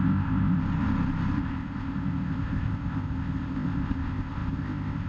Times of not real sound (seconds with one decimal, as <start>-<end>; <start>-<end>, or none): 0.0-0.6; 1.4-5.1